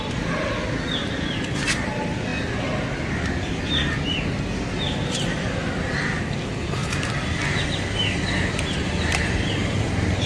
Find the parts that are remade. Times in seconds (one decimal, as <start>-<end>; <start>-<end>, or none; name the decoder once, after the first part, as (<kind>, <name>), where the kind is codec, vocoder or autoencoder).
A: 9.1-10.3 (vocoder, BigVGAN v2)